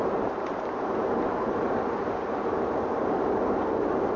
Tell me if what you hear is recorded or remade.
remade